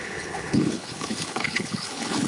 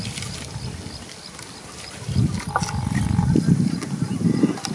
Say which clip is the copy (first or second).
first